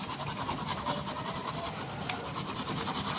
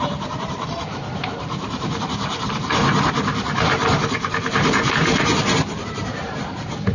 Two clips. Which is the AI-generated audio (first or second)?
second